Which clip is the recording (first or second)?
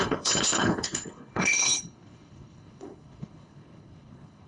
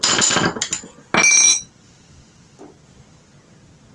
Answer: second